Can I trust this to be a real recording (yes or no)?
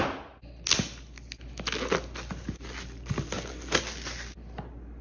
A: yes